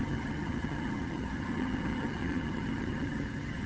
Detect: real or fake fake